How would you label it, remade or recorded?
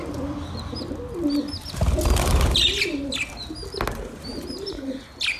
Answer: recorded